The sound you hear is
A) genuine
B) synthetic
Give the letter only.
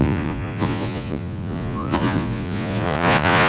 B